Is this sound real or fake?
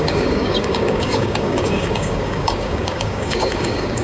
fake